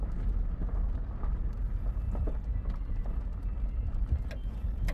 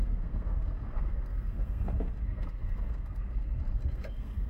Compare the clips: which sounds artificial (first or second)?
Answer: second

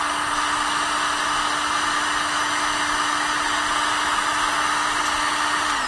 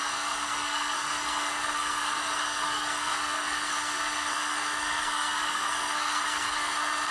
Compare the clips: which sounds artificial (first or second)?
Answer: second